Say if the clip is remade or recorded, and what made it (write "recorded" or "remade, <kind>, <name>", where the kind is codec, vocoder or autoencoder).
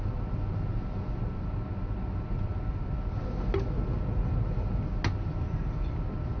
recorded